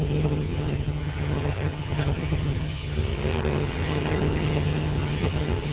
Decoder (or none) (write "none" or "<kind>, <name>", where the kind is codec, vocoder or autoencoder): vocoder, HiFi-GAN